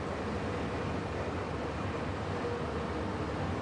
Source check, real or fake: real